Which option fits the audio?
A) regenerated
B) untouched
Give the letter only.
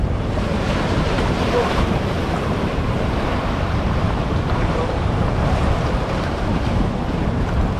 A